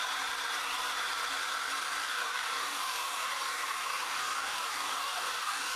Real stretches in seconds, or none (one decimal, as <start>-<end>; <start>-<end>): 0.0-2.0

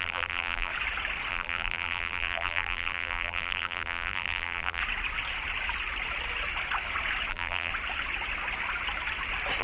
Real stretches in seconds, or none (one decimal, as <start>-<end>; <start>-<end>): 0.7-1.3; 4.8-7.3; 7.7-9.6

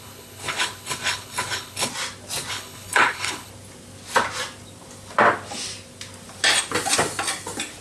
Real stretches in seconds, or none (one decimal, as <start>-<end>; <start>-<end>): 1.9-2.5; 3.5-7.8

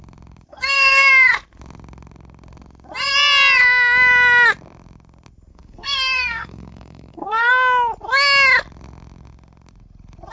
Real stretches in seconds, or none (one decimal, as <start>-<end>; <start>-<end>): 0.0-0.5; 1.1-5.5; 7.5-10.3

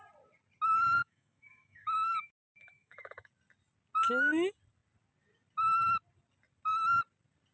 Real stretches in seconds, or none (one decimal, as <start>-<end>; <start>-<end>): 0.0-1.0; 3.3-7.5

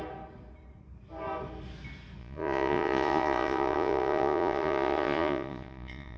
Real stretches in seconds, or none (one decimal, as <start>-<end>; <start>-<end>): 0.0-2.2

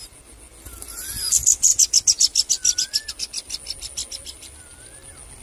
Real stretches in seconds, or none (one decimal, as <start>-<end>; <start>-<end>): 0.0-5.4

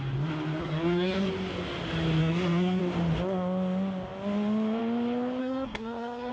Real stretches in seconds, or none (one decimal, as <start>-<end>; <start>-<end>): 0.0-0.6; 1.3-2.2; 2.8-5.4